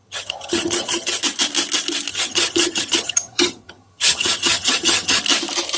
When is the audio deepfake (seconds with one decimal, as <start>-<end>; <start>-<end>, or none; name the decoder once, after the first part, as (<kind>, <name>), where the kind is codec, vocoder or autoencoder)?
0.0-1.2 (vocoder, HiFi-GAN); 2.1-5.2